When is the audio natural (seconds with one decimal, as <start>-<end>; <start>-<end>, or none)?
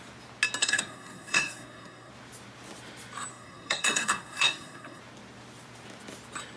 0.0-0.6; 2.1-3.3; 5.0-6.6